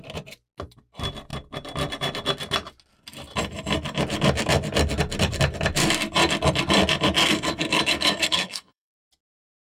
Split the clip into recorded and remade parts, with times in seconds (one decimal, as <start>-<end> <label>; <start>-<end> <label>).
0.0-7.2 recorded; 7.2-9.0 remade; 9.0-9.7 recorded